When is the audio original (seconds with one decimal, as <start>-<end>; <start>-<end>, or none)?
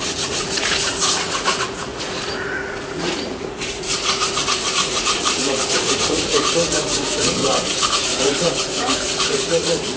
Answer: 7.4-7.9